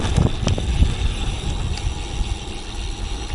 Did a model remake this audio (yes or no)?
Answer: yes